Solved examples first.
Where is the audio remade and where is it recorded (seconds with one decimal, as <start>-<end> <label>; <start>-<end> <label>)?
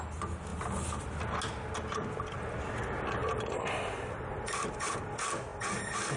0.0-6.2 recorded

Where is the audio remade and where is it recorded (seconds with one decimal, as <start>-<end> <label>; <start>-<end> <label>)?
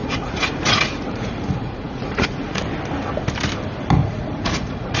0.0-2.6 remade; 2.6-4.0 recorded; 4.0-5.0 remade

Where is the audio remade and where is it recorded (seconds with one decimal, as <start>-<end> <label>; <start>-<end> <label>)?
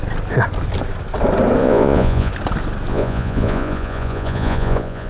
0.0-1.6 recorded; 1.6-2.3 remade; 2.3-2.9 recorded; 2.9-5.1 remade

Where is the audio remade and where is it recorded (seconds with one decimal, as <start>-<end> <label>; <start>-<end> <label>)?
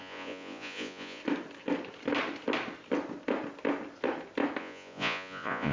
0.0-1.2 remade; 1.2-4.6 recorded; 4.6-5.7 remade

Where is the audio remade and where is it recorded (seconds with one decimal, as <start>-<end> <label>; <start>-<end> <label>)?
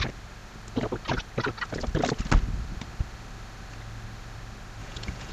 0.0-4.8 recorded; 4.8-5.3 remade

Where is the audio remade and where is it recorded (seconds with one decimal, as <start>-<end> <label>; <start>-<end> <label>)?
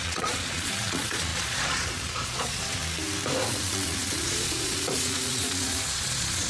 0.0-2.8 remade; 2.8-3.5 recorded; 3.5-6.5 remade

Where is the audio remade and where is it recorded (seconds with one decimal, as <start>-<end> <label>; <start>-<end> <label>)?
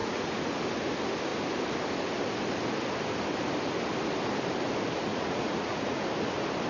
0.0-0.6 remade; 0.6-5.1 recorded; 5.1-6.0 remade; 6.0-6.7 recorded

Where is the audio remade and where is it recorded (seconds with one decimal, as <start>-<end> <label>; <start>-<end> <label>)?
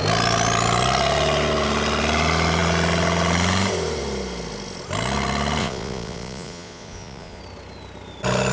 0.0-5.6 recorded; 5.6-7.4 remade; 7.4-8.5 recorded